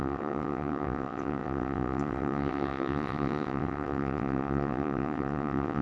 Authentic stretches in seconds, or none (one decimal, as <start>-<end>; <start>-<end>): none